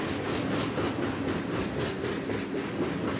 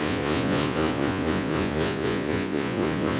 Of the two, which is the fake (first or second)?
second